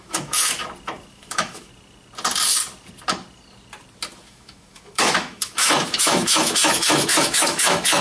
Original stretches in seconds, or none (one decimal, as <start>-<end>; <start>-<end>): 0.6-1.1; 1.7-4.3